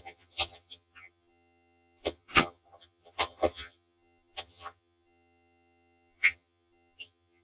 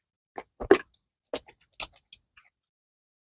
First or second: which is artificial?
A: first